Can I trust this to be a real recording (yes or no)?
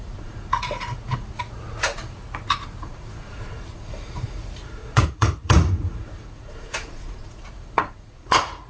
no